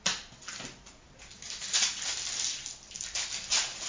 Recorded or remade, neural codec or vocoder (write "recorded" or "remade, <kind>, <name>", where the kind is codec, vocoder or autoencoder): recorded